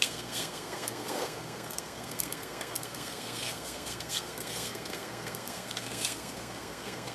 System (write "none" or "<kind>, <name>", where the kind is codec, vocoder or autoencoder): codec, SNAC